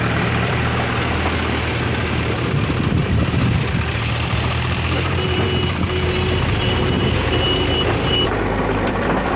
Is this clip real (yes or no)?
no